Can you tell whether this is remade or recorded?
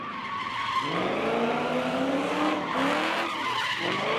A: recorded